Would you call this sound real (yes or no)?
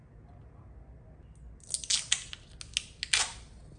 yes